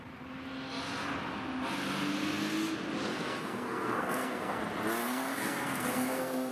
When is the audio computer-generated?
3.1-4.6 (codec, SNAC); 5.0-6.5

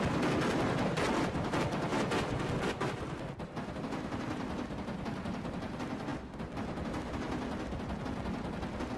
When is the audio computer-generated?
none

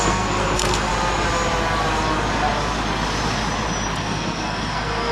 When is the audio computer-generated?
0.0-0.9 (codec, SNAC); 4.0-5.1

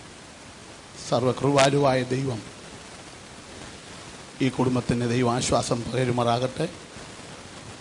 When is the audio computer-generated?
none

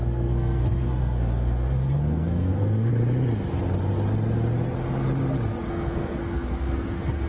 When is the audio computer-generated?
0.0-2.9 (codec, SNAC); 5.7-7.3

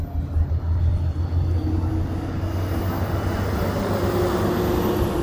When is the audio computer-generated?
none